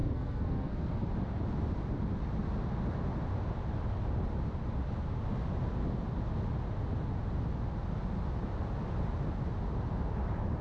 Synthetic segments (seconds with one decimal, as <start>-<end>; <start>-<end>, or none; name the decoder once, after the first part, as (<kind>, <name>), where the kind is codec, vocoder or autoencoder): 0.0-1.1 (codec, SNAC)